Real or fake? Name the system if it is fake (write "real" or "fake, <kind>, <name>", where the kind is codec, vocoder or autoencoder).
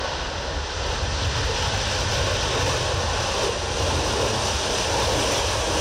real